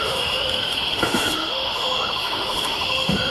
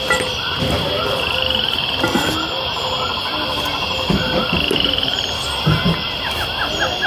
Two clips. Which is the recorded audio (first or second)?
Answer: second